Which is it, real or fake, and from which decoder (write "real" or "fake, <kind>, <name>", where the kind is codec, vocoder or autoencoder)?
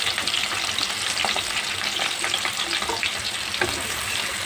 fake, vocoder, BigVGAN v2